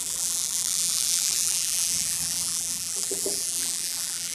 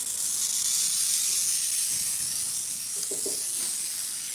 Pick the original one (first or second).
second